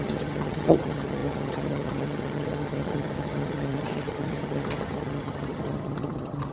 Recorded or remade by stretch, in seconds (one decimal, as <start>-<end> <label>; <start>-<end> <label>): 0.0-6.5 remade